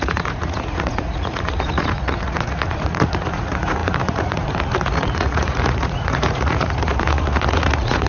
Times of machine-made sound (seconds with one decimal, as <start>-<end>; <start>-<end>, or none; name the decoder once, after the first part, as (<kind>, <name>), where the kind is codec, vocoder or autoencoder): 0.0-8.1 (vocoder, Vocos)